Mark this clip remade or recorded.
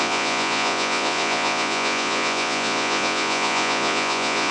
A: remade